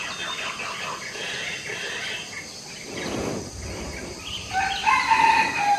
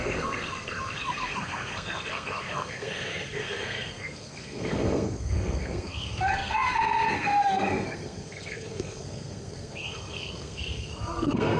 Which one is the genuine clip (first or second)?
first